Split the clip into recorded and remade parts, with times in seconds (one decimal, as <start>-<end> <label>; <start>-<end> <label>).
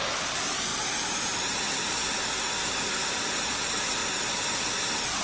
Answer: 0.0-0.7 recorded; 0.7-3.3 remade; 3.3-5.2 recorded